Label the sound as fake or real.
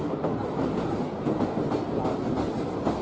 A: fake